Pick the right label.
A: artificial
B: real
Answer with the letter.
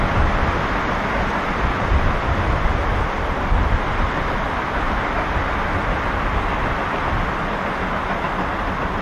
B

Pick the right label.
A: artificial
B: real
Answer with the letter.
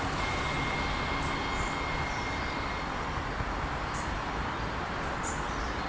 B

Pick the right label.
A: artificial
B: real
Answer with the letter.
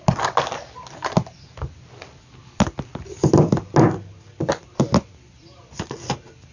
B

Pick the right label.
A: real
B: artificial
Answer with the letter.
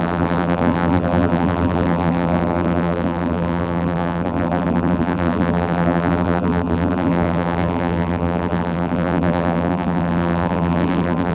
B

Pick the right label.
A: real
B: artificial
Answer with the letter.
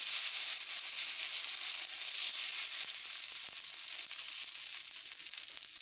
A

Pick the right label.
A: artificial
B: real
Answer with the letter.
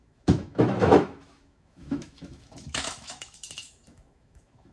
A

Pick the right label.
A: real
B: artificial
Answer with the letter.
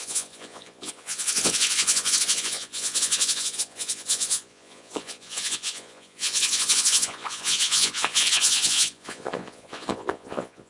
B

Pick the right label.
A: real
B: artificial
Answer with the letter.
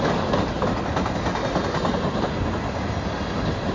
A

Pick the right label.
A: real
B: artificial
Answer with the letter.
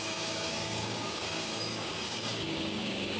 B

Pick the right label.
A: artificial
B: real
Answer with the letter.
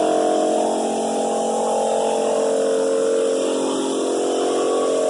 B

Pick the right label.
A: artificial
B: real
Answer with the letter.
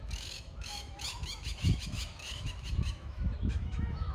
A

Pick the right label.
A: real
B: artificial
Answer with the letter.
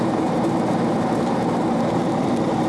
B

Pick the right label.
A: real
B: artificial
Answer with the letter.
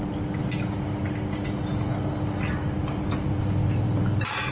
A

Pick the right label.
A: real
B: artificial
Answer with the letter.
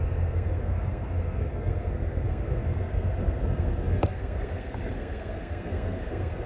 B